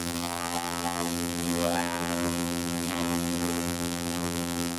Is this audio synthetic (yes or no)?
yes